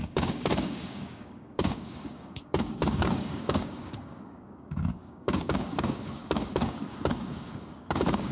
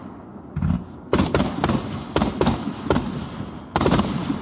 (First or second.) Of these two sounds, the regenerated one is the first